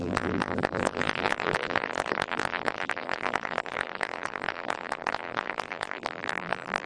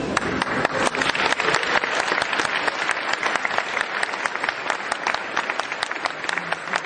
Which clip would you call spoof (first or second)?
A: first